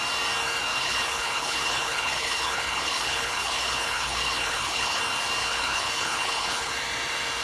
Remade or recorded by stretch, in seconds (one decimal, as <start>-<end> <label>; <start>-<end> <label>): 0.0-0.7 recorded; 0.7-5.0 remade; 5.0-5.4 recorded; 5.4-6.7 remade; 6.7-7.4 recorded